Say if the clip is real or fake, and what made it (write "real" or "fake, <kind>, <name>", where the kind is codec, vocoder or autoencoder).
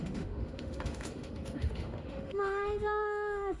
fake, autoencoder, DAC-VAE